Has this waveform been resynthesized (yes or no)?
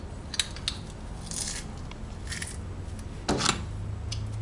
no